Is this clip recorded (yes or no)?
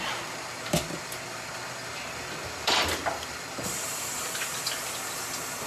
no